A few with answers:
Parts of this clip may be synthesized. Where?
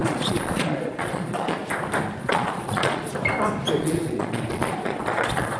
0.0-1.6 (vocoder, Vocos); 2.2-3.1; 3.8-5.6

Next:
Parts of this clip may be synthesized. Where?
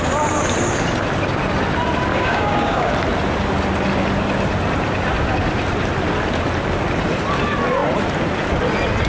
2.1-2.9 (codec, DAC)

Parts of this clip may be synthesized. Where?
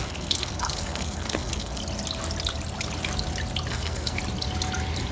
0.0-1.8 (codec, SNAC); 3.7-4.2